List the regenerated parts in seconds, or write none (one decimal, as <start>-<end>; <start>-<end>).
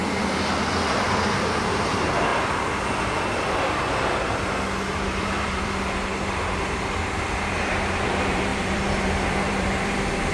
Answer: 1.9-2.3; 5.2-10.3